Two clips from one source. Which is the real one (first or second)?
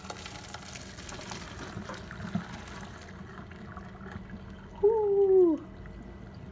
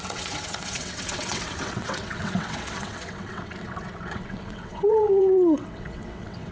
first